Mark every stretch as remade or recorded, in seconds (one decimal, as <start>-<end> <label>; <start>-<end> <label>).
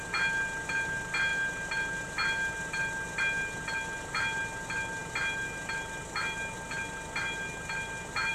0.0-8.3 recorded